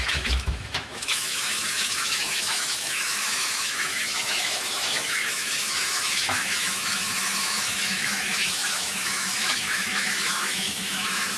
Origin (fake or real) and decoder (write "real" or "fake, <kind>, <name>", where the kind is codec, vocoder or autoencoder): fake, autoencoder, DAC-VAE